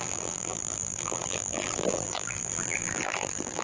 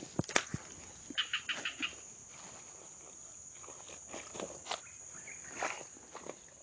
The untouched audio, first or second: second